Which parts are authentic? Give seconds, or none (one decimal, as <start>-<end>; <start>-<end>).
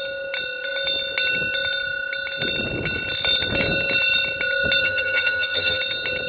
0.0-4.8; 5.8-6.3